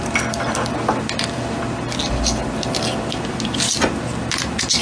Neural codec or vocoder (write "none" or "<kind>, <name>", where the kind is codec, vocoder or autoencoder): none